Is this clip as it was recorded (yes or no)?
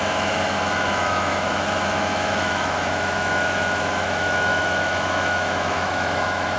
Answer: no